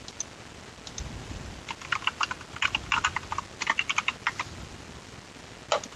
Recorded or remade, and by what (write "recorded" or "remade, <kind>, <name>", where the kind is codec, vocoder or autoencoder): recorded